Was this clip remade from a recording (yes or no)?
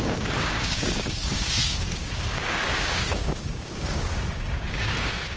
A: yes